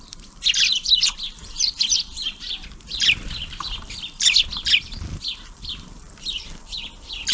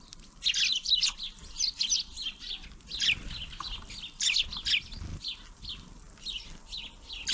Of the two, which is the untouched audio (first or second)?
second